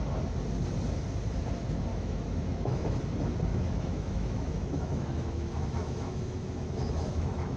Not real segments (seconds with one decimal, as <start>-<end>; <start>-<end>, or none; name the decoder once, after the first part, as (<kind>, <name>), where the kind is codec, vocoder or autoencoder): 1.9-3.0 (autoencoder, DAC-VAE); 3.5-7.6